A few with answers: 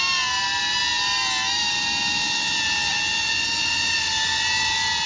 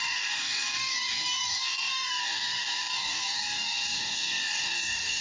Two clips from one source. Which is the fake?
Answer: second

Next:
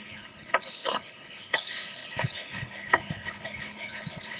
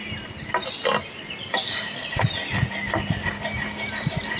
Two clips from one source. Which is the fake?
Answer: first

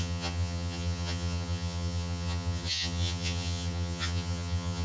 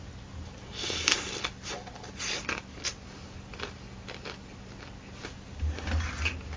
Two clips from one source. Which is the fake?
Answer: first